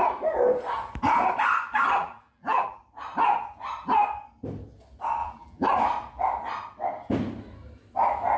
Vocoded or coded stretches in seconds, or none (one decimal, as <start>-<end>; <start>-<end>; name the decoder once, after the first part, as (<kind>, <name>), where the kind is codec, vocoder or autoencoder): 2.0-2.8 (vocoder, BigVGAN v2); 5.2-5.7